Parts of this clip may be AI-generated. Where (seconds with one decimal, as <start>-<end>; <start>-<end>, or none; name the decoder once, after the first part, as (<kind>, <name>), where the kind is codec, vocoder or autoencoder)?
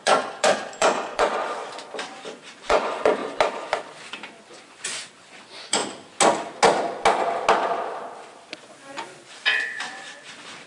0.0-1.6 (vocoder, Vocos); 2.6-3.2; 4.4-5.8